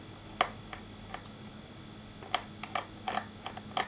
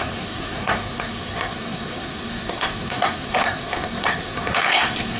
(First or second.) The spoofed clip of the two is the second